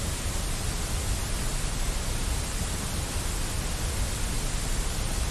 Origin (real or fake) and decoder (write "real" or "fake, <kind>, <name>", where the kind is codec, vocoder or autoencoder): real